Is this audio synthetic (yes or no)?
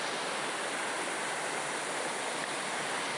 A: no